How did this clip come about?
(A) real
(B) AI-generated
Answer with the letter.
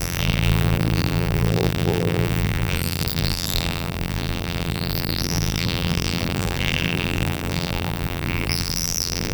B